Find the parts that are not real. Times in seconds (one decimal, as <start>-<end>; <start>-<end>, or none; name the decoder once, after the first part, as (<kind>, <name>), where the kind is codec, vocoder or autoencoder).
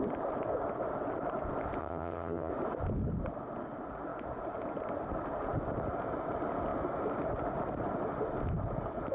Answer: 1.8-2.5 (vocoder, HiFi-GAN)